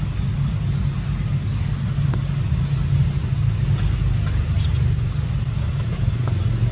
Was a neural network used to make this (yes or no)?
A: no